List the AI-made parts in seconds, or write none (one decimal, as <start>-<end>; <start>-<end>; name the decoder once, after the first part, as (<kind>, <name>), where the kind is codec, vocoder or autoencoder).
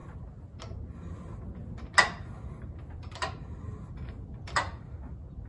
none